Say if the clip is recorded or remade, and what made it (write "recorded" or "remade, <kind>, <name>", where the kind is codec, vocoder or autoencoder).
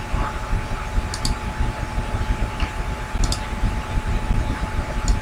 recorded